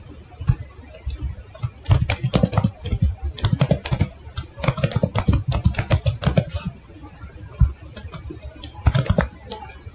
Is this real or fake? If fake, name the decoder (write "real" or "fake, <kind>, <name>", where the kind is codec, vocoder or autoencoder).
real